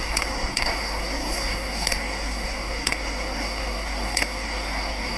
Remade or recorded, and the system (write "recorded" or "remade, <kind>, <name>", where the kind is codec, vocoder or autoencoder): remade, codec, SNAC